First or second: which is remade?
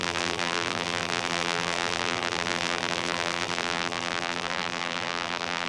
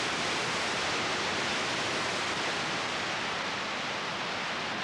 first